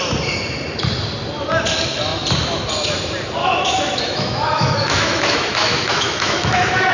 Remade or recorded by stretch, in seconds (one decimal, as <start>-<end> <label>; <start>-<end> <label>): 0.0-3.4 recorded; 3.4-6.9 remade